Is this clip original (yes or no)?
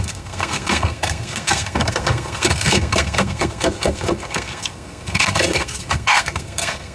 no